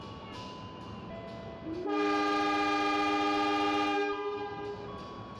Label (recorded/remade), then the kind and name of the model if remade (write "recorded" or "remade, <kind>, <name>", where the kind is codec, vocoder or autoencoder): recorded